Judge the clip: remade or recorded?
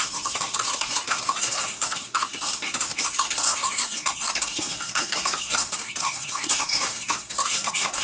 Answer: remade